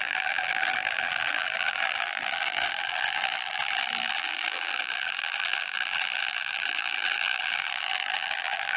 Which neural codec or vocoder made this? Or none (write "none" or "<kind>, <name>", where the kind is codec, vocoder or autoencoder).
vocoder, BigVGAN v2